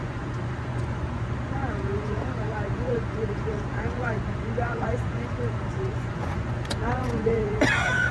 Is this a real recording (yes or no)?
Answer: no